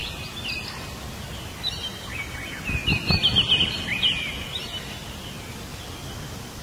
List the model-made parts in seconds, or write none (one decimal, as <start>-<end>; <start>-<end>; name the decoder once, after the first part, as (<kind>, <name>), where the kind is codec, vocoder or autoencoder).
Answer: none